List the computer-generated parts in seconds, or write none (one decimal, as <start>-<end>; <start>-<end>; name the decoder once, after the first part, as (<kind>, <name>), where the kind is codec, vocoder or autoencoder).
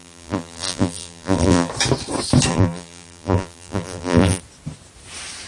0.0-1.7 (vocoder, BigVGAN v2); 2.5-4.4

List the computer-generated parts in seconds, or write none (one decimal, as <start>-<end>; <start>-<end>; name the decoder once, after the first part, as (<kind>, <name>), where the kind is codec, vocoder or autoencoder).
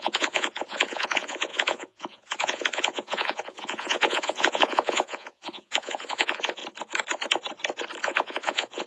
0.0-6.6 (vocoder, Vocos); 8.0-8.9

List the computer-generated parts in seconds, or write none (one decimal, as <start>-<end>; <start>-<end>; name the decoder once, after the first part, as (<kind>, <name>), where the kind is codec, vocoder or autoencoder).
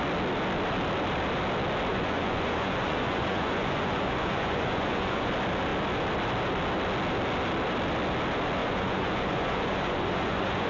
1.9-5.3 (vocoder, Vocos); 8.6-10.7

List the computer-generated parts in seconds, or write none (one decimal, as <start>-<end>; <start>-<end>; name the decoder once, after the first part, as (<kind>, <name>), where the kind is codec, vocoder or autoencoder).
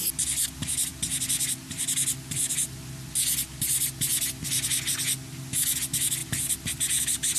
none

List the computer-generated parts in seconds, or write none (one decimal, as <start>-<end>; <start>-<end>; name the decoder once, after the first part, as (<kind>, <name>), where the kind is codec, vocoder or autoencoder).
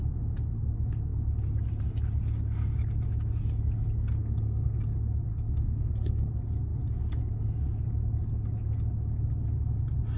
4.2-4.8 (codec, SNAC); 5.3-6.3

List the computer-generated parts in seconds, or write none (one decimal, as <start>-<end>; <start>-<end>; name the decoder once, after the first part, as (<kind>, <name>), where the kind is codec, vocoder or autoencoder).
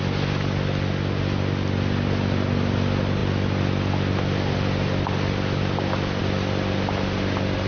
none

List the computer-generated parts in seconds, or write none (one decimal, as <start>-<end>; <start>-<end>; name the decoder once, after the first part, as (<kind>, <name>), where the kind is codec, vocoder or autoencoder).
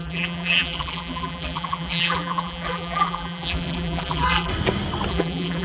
0.0-4.5 (vocoder, BigVGAN v2); 5.1-5.6